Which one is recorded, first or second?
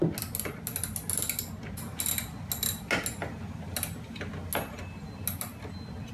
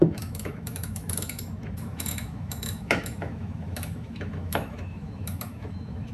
first